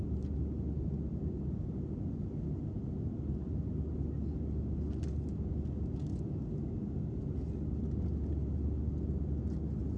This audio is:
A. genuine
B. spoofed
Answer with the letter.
A